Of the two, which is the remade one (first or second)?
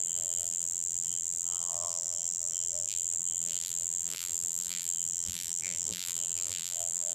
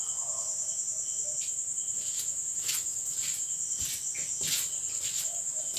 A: first